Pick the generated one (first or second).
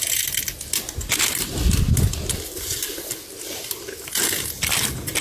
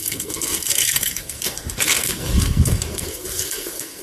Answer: second